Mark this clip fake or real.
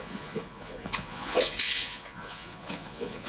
fake